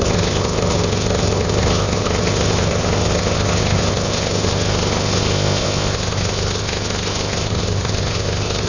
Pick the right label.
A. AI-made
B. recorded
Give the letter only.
A